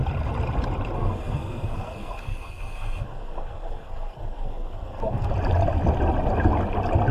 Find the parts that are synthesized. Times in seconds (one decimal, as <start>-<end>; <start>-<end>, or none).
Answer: 1.0-5.3